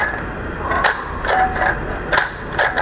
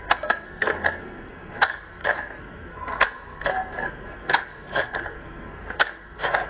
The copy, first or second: second